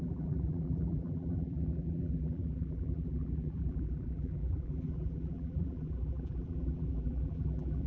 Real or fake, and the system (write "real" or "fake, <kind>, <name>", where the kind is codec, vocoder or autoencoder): fake, vocoder, BigVGAN v2